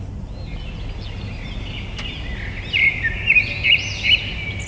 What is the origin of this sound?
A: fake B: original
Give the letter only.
B